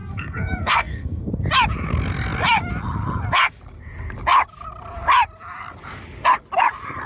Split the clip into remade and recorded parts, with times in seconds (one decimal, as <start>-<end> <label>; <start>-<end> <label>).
0.0-1.3 remade; 1.3-7.1 recorded